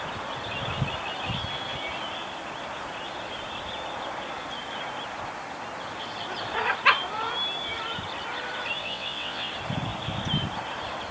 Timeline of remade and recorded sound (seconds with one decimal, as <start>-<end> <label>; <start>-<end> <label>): 0.0-8.8 recorded; 8.8-9.5 remade; 9.5-11.1 recorded